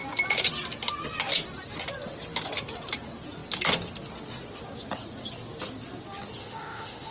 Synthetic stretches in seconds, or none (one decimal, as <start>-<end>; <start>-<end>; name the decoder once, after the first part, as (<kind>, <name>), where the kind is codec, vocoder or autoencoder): 6.4-7.1 (autoencoder, DAC-VAE)